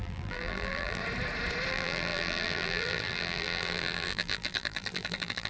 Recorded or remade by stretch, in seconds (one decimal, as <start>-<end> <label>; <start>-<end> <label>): 0.0-1.0 remade; 1.0-1.7 recorded; 1.7-5.5 remade